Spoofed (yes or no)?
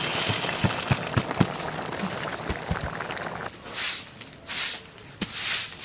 no